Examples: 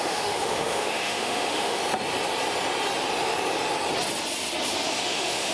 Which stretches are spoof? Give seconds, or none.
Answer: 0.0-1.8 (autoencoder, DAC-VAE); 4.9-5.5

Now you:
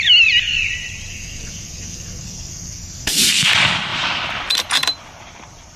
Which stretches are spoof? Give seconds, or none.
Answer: 1.1-3.5 (codec, SNAC)

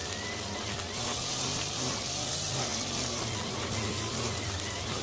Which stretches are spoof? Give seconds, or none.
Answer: none

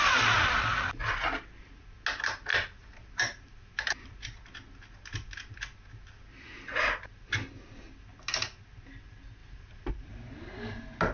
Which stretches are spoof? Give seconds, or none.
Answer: 2.5-4.1 (vocoder, BigVGAN v2); 9.4-9.9

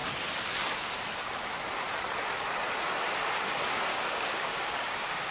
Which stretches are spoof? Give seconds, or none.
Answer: 3.9-5.3 (codec, DAC)

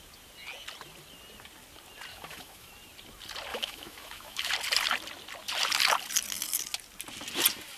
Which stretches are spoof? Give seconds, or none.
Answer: 2.1-2.7 (autoencoder, DAC-VAE); 3.5-4.5

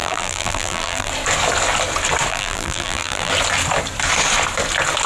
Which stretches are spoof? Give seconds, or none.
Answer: 0.0-1.1 (vocoder, BigVGAN v2); 2.3-3.3